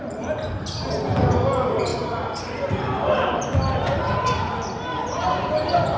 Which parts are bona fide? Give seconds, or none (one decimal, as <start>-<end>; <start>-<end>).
0.0-1.9; 3.9-4.9; 5.5-6.0